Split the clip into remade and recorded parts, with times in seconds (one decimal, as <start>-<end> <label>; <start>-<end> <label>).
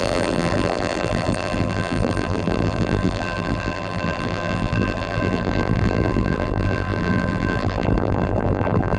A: 0.0-9.0 remade